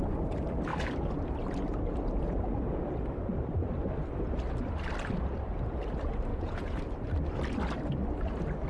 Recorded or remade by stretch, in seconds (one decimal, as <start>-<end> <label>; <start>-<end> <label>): 0.0-6.3 recorded; 6.3-6.8 remade; 6.8-8.7 recorded